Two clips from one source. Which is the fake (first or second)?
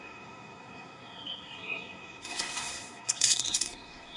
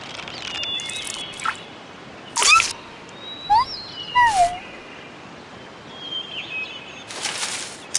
first